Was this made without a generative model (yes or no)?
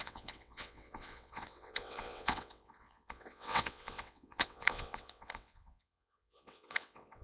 no